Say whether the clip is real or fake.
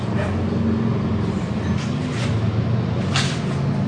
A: real